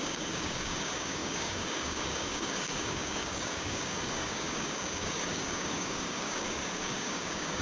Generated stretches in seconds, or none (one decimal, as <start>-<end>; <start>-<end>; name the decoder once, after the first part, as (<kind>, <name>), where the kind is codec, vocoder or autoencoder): 0.0-7.6 (codec, DAC)